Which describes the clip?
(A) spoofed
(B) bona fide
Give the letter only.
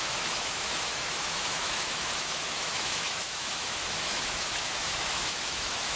A